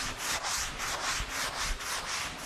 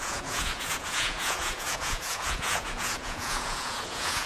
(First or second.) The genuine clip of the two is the first